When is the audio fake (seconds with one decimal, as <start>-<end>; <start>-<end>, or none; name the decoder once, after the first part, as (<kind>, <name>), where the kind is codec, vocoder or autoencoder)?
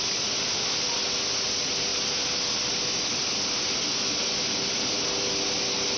none